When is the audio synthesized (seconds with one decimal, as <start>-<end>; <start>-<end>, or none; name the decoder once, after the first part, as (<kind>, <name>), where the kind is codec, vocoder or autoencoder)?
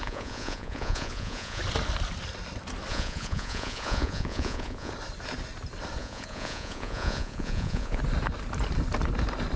0.0-1.6 (vocoder, Vocos); 2.9-4.9; 6.0-8.0